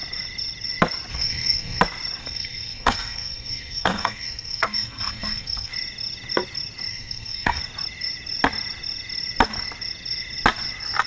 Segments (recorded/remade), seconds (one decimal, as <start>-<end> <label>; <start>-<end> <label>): 0.0-1.1 recorded; 1.1-1.8 remade; 1.8-2.2 recorded; 2.2-5.7 remade; 5.7-6.9 recorded; 6.9-7.6 remade; 7.6-11.1 recorded